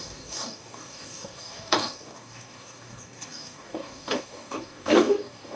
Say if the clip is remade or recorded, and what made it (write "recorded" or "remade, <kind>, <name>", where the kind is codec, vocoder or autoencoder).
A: remade, codec, DAC